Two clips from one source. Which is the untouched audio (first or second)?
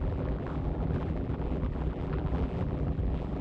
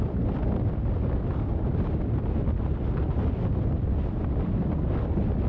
second